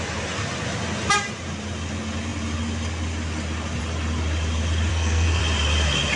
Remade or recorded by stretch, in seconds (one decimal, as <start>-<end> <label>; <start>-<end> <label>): 0.0-4.9 recorded; 4.9-5.4 remade; 5.4-6.2 recorded